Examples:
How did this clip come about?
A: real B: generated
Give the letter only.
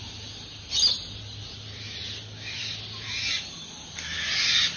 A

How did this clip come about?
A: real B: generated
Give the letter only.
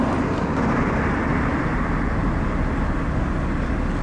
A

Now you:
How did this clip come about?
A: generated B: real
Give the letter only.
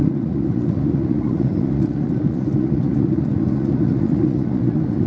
A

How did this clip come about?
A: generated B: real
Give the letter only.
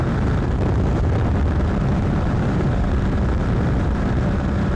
A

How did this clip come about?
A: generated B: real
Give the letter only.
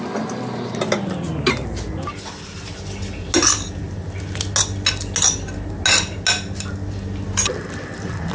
B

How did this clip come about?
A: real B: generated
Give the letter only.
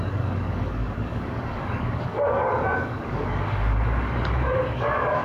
B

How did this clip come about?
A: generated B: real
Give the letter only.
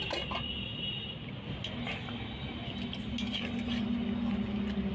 B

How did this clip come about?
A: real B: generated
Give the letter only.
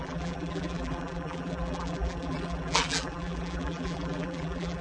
B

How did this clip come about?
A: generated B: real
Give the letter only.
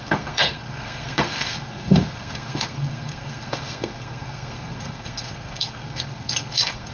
A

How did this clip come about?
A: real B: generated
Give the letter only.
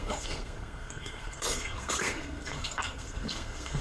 B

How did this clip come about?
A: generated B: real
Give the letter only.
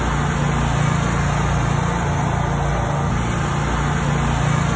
B